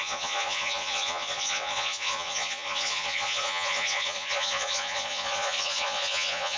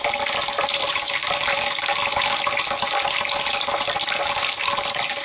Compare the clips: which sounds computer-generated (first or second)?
first